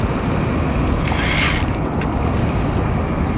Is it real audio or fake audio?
real